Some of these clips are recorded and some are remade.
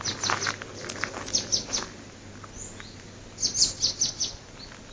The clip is recorded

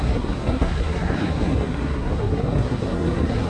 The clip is remade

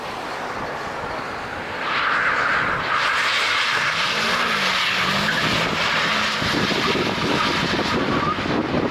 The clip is recorded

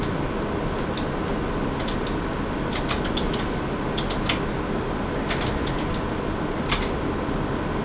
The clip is recorded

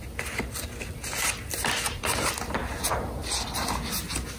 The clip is recorded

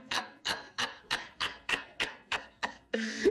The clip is remade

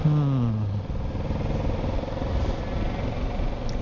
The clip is recorded